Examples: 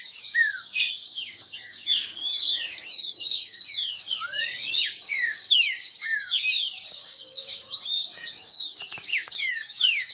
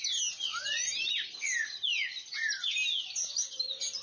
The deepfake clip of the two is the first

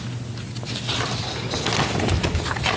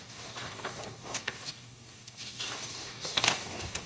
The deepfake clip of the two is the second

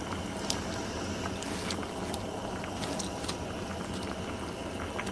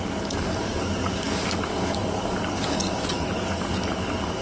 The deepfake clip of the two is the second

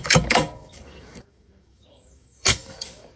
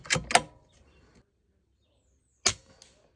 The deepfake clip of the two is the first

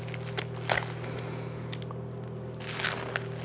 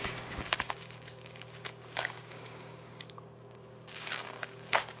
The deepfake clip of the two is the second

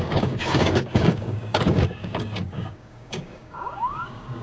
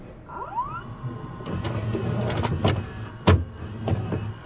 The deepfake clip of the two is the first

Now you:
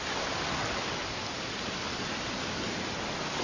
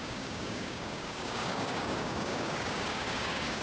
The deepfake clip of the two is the second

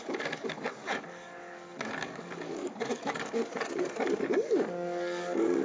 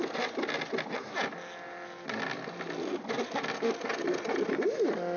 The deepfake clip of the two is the first